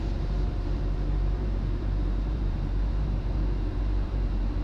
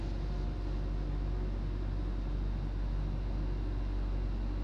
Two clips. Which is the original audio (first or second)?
second